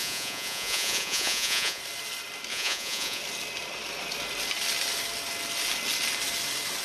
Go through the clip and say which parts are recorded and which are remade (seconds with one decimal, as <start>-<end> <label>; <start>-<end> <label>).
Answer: 0.0-1.8 remade; 1.8-2.5 recorded; 2.5-3.2 remade; 3.2-6.8 recorded